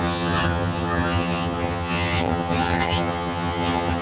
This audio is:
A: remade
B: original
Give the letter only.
A